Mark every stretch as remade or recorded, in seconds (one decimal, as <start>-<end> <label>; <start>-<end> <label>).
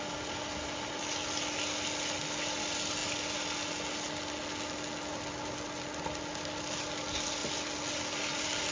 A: 0.0-8.7 recorded